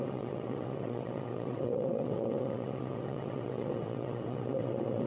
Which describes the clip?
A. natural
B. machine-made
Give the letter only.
B